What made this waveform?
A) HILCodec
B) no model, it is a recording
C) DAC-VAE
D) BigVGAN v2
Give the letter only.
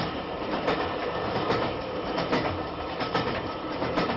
D